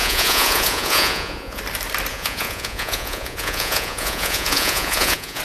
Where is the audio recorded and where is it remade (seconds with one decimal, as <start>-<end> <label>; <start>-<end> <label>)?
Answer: 0.0-1.6 remade; 1.6-2.1 recorded; 2.1-5.4 remade